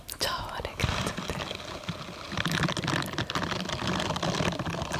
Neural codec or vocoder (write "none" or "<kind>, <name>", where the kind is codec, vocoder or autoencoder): none